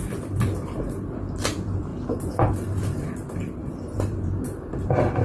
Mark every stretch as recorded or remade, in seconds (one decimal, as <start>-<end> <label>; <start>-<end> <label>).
0.0-5.2 remade